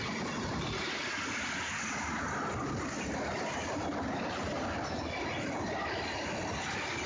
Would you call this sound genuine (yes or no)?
yes